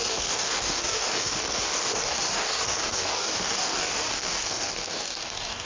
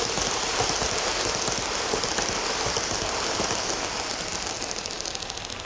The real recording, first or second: second